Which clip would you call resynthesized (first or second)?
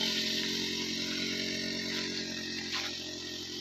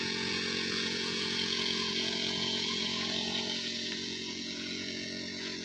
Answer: second